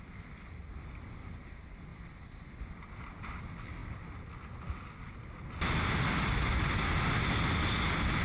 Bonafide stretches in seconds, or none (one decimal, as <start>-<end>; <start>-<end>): 0.0-8.2